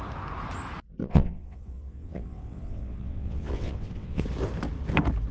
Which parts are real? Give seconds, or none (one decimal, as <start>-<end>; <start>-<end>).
0.0-1.0; 4.2-5.3